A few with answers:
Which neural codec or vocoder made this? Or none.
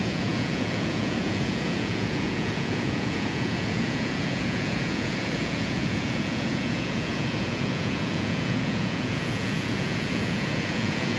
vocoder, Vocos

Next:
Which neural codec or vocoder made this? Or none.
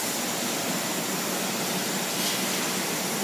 none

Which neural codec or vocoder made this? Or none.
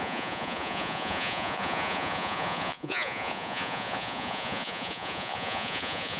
vocoder, Vocos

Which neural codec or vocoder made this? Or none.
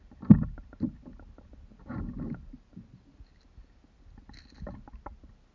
none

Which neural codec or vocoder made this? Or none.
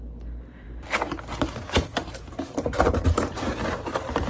none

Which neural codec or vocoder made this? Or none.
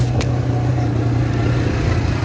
none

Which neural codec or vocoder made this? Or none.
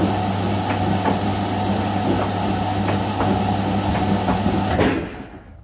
none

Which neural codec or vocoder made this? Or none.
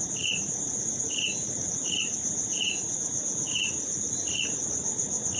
vocoder, Vocos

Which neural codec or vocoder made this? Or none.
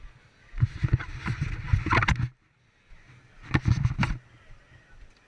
none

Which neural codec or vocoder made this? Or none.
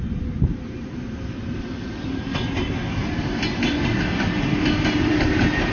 none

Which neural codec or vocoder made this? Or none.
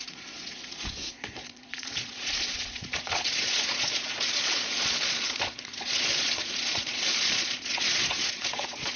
vocoder, Vocos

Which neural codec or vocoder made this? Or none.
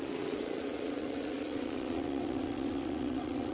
vocoder, Vocos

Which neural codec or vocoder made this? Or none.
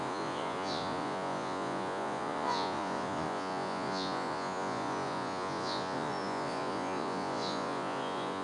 vocoder, Vocos